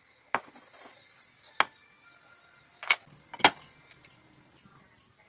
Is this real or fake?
real